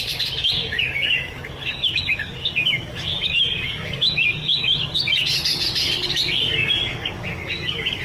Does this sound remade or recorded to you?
remade